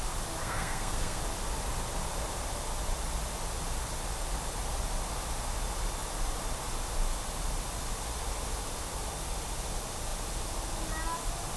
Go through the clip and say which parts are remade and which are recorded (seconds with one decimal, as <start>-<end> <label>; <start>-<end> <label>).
0.0-0.4 recorded; 0.4-1.2 remade; 1.2-11.6 recorded